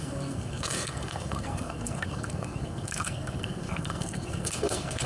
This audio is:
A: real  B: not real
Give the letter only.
B